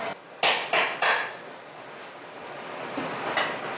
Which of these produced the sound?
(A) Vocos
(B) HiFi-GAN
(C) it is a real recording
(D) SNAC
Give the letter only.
C